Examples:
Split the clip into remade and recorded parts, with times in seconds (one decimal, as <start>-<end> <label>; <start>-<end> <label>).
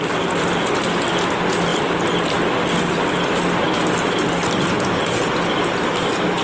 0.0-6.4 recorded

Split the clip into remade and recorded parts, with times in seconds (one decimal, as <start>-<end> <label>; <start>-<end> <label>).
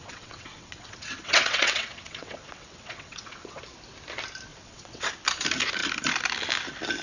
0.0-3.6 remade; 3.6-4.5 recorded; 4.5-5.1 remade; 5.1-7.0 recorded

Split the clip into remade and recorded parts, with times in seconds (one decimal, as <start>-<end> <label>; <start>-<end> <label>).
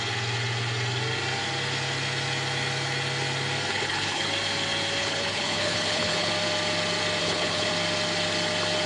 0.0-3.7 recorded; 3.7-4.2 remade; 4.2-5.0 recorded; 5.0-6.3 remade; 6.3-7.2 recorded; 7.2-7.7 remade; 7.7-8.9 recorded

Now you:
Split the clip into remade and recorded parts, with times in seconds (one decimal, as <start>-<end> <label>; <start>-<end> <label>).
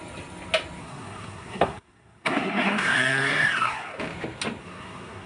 0.0-0.8 recorded; 0.8-4.0 remade; 4.0-4.6 recorded; 4.6-5.3 remade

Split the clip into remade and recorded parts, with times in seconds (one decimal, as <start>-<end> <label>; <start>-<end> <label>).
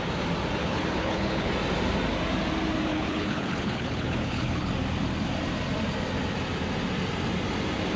0.0-0.6 recorded; 0.6-1.5 remade; 1.5-2.9 recorded; 2.9-4.7 remade; 4.7-8.0 recorded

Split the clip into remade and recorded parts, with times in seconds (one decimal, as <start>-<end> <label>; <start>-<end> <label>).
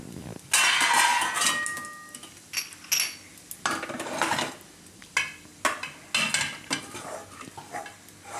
0.0-8.4 recorded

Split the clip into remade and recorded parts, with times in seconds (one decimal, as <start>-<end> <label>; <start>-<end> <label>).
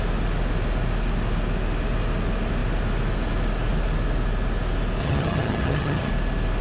0.0-5.0 recorded; 5.0-6.1 remade; 6.1-6.6 recorded